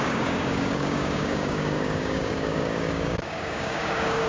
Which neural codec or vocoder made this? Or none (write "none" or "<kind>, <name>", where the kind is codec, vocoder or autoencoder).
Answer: codec, DAC